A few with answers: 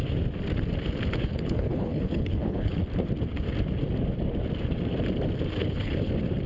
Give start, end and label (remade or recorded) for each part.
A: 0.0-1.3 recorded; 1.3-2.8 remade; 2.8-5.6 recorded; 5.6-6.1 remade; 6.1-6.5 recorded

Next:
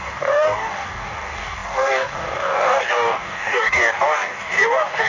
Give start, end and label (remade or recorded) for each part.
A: 0.0-5.1 remade

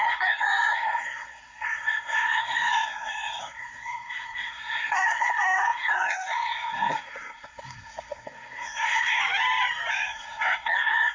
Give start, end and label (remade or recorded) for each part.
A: 0.0-9.2 remade; 9.2-9.9 recorded; 9.9-11.1 remade

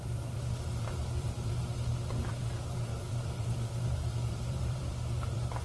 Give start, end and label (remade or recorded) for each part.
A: 0.0-1.6 remade; 1.6-2.2 recorded; 2.2-5.6 remade

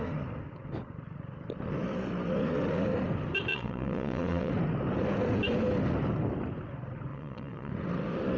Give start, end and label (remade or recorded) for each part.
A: 0.0-3.5 recorded; 3.5-4.5 remade; 4.5-7.1 recorded; 7.1-7.7 remade; 7.7-8.4 recorded

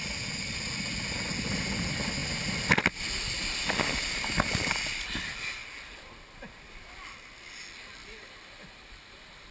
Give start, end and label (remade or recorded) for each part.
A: 0.0-9.5 recorded

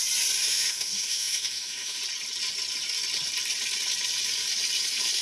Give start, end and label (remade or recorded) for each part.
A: 0.0-0.4 recorded; 0.4-2.0 remade; 2.0-5.2 recorded